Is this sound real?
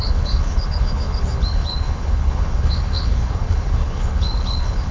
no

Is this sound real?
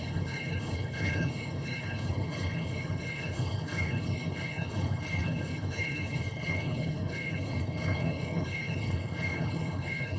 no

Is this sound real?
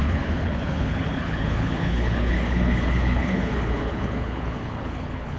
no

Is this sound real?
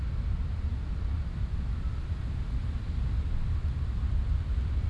yes